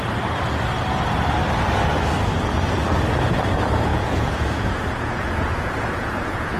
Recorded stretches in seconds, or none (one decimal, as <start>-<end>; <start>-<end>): 0.0-3.9